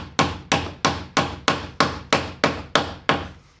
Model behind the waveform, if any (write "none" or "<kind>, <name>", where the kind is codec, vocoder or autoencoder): none